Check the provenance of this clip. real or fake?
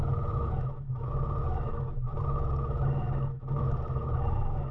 fake